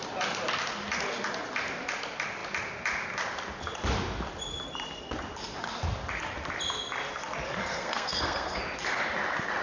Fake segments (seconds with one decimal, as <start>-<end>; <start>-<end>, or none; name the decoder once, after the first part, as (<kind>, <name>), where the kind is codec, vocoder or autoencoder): 7.6-8.6 (codec, SNAC)

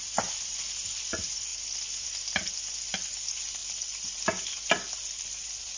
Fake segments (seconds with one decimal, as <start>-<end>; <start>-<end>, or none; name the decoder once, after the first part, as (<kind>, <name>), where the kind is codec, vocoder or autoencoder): none

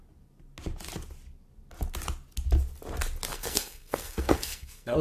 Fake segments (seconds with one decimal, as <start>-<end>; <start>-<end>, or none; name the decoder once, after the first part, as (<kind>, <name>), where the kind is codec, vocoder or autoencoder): 3.3-5.0 (codec, SNAC)